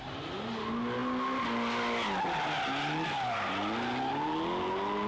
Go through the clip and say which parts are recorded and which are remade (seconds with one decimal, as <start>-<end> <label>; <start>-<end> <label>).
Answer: 0.0-5.1 recorded